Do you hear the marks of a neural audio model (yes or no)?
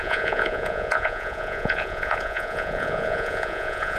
yes